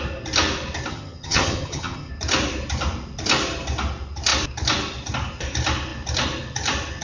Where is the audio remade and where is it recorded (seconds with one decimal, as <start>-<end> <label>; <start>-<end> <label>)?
0.0-0.9 recorded; 0.9-2.1 remade; 2.1-7.0 recorded